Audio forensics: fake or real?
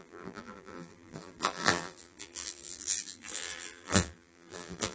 fake